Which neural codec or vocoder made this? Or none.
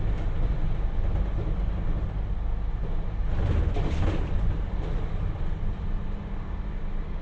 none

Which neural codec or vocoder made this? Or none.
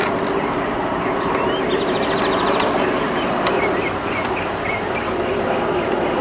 none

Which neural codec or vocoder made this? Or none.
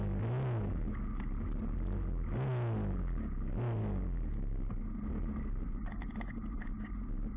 none